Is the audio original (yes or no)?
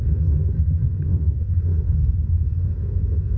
no